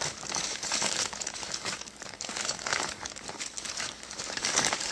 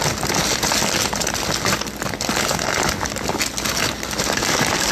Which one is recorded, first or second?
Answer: second